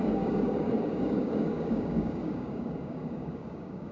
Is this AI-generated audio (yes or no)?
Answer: yes